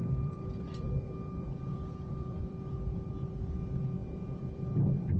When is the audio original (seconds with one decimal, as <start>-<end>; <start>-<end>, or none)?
3.1-4.0